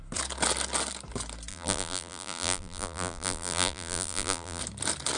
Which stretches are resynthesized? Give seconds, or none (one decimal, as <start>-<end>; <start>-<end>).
1.5-4.6